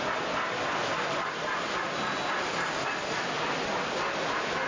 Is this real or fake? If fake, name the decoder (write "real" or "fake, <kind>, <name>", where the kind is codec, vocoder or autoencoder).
real